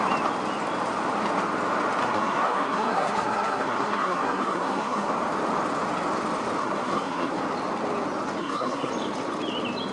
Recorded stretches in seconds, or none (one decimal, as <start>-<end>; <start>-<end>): 0.0-2.0; 5.1-6.6; 7.3-8.4; 8.9-9.9